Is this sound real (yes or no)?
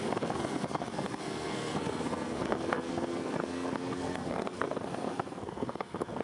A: no